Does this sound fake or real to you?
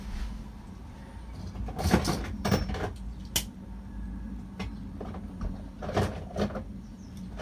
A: real